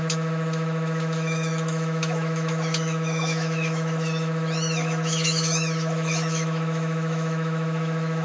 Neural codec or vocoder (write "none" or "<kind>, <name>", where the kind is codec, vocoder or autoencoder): autoencoder, DAC-VAE